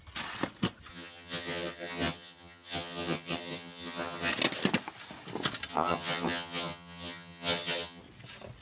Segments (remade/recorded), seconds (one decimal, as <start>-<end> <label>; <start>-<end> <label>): 0.0-0.9 recorded; 0.9-4.3 remade; 4.3-5.7 recorded; 5.7-8.0 remade; 8.0-8.6 recorded